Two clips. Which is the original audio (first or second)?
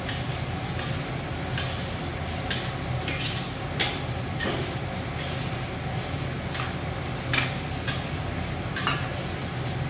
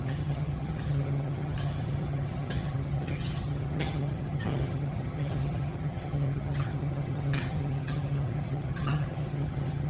first